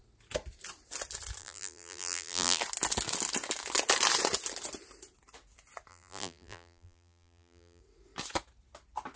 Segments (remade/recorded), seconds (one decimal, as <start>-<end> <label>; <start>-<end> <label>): 0.0-1.4 recorded; 1.4-2.6 remade; 2.6-5.9 recorded; 5.9-7.8 remade; 7.8-9.2 recorded